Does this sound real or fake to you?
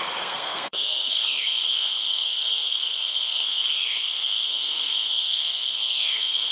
fake